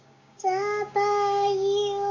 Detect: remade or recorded remade